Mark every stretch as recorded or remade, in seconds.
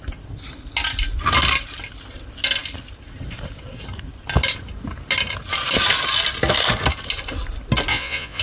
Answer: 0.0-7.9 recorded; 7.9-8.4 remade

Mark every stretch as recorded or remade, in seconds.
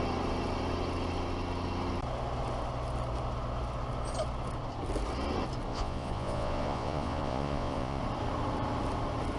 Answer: 0.0-5.7 recorded; 5.7-8.0 remade; 8.0-9.4 recorded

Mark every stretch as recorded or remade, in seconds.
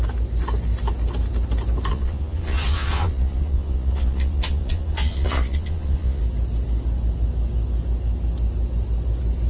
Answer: 0.0-1.9 recorded; 1.9-6.2 remade; 6.2-9.5 recorded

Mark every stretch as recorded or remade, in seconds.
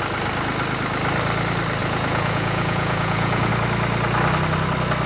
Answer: 0.0-1.8 recorded; 1.8-3.5 remade; 3.5-5.1 recorded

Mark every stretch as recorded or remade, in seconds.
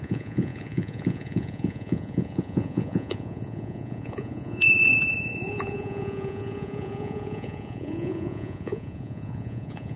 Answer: 0.0-10.0 remade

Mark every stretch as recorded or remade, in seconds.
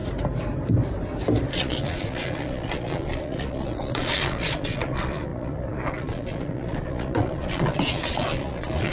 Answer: 0.0-1.5 recorded; 1.5-8.9 remade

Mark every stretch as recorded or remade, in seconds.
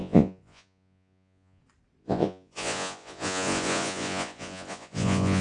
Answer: 0.0-1.6 remade; 1.6-2.0 recorded; 2.0-5.4 remade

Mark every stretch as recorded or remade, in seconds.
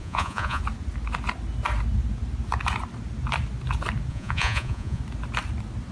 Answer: 0.0-0.6 remade; 0.6-4.1 recorded; 4.1-5.0 remade; 5.0-5.9 recorded